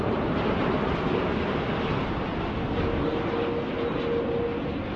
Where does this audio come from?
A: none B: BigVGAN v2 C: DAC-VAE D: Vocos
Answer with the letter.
A